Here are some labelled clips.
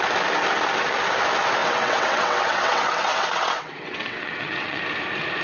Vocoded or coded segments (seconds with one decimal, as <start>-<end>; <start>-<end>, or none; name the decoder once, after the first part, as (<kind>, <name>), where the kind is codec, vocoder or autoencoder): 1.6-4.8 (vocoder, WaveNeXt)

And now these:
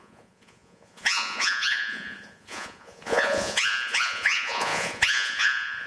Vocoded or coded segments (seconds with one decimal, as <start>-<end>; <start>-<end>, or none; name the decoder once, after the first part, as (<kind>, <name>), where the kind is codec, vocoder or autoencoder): 0.0-5.9 (vocoder, Vocos)

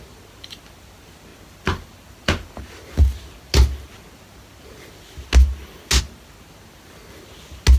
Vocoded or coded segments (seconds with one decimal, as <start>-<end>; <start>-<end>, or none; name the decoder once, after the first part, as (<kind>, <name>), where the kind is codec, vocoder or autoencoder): none

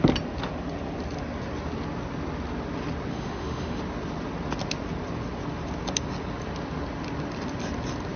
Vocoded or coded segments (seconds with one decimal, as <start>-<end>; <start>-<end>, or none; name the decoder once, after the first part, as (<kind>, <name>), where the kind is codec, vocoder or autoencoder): 3.1-3.8 (autoencoder, DAC-VAE)

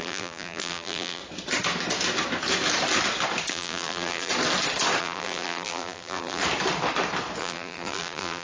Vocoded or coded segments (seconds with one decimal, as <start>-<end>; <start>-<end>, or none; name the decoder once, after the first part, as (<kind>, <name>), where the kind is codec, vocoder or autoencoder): 0.0-1.2 (vocoder, BigVGAN v2); 3.5-4.3; 5.0-6.4; 7.4-8.4